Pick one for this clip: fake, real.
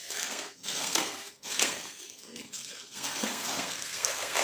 fake